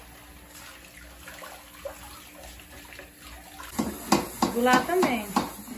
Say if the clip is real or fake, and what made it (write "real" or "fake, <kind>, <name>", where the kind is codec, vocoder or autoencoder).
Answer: real